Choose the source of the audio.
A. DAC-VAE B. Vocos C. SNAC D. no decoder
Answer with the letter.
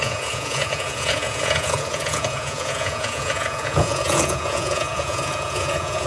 B